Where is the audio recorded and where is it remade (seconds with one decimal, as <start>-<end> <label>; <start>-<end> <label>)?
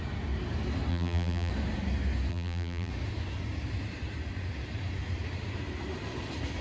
0.0-0.9 recorded; 0.9-1.5 remade; 1.5-2.3 recorded; 2.3-2.9 remade; 2.9-6.6 recorded